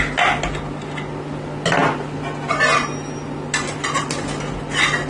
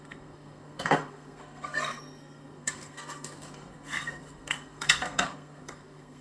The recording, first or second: first